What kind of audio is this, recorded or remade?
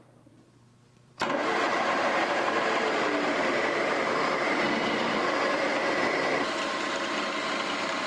remade